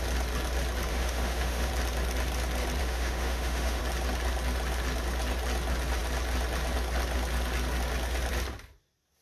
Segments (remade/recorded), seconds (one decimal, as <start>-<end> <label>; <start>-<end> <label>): 0.0-0.9 recorded; 0.9-1.7 remade; 1.7-2.8 recorded; 2.8-3.8 remade; 3.8-9.2 recorded